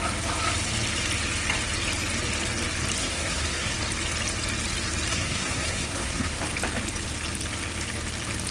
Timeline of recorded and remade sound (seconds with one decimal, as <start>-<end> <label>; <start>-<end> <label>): 0.0-3.0 recorded; 3.0-3.7 remade; 3.7-5.1 recorded; 5.1-6.4 remade; 6.4-8.5 recorded